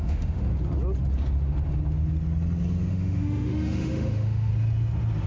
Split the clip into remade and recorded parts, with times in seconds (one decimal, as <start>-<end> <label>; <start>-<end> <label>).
0.0-0.5 remade; 0.5-2.9 recorded; 2.9-4.5 remade; 4.5-5.3 recorded